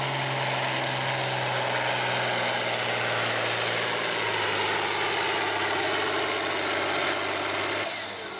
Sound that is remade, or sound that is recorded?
recorded